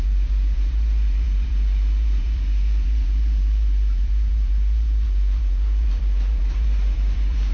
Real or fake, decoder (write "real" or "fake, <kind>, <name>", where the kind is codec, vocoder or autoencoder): fake, vocoder, BigVGAN v2